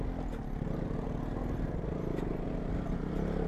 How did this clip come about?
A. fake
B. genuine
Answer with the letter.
B